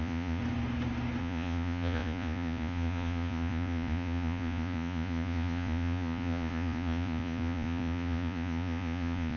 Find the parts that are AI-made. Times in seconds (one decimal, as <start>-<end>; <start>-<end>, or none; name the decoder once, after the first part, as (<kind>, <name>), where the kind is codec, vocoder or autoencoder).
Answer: 0.0-0.4 (vocoder, Vocos); 1.2-9.4